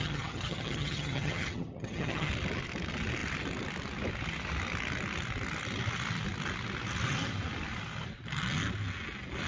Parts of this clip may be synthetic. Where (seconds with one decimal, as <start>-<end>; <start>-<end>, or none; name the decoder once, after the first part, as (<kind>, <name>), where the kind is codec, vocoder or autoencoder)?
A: 0.0-2.3 (vocoder, HiFi-GAN)